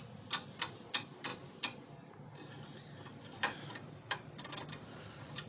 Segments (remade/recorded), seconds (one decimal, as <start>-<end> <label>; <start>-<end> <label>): 0.0-5.5 recorded